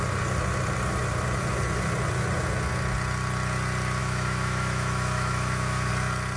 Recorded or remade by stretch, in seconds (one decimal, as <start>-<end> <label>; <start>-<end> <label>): 0.0-4.0 recorded; 4.0-5.9 remade; 5.9-6.4 recorded